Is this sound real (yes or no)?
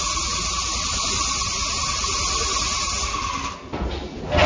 yes